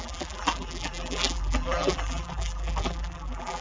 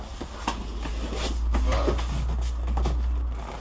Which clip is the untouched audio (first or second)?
second